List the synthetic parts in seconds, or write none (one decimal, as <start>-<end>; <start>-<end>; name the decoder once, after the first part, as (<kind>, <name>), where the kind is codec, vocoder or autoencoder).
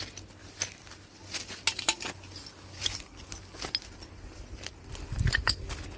none